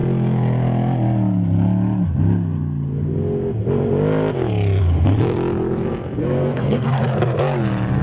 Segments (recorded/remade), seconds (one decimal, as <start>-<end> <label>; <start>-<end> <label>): 0.0-6.2 recorded; 6.2-7.0 remade; 7.0-8.0 recorded